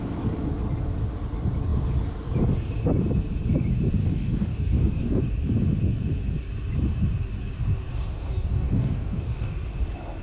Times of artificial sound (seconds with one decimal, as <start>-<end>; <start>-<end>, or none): 4.0-5.2; 7.9-9.5